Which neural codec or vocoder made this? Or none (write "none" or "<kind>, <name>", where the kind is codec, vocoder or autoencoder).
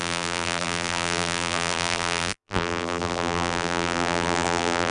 vocoder, BigVGAN v2